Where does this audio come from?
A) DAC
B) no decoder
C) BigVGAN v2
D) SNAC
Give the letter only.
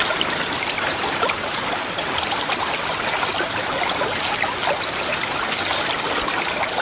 B